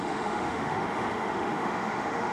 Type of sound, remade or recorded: remade